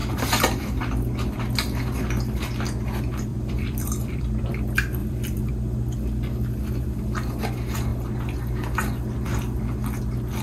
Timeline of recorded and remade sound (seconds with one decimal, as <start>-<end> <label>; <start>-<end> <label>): 0.0-0.8 remade; 0.8-3.3 recorded; 3.3-4.5 remade; 4.5-5.0 recorded; 5.0-5.5 remade; 5.5-10.4 recorded